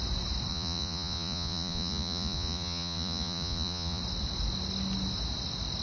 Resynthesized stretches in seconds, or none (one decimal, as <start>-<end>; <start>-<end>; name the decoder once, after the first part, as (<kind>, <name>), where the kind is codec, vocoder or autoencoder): 0.5-4.0 (vocoder, Vocos)

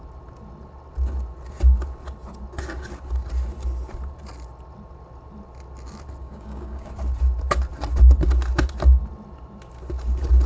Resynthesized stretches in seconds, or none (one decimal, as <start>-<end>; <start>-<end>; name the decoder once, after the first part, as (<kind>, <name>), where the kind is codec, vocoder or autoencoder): 6.2-6.9 (codec, DAC)

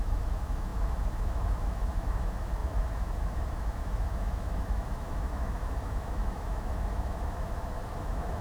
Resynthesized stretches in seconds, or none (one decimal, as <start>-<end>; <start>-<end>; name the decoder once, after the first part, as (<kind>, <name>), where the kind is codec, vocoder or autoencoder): 0.0-8.4 (autoencoder, DAC-VAE)

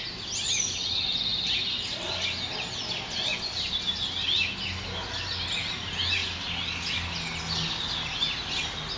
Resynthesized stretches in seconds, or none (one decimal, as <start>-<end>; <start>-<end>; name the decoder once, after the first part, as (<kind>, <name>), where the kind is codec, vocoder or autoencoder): none

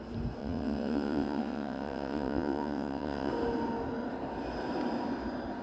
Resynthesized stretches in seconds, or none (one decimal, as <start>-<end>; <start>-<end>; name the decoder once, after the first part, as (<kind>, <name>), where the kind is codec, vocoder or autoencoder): 0.4-3.3 (vocoder, WaveNeXt)

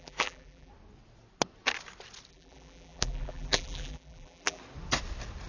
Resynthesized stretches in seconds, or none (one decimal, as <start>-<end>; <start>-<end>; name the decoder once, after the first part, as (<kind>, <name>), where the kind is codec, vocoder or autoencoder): 0.0-0.7 (vocoder, BigVGAN v2); 2.3-4.6

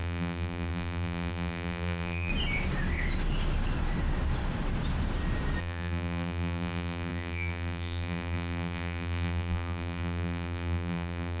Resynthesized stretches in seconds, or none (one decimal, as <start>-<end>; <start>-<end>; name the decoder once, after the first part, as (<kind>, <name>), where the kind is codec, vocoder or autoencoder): 0.0-2.3 (vocoder, BigVGAN v2); 5.6-11.4